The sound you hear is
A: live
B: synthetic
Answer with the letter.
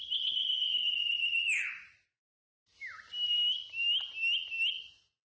A